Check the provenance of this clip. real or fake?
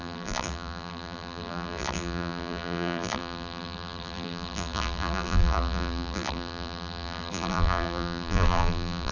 fake